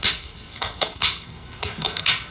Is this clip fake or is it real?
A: fake